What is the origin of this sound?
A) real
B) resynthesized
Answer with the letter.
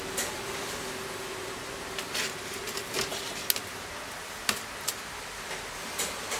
A